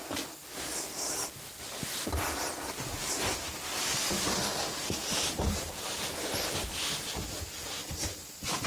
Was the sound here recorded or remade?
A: recorded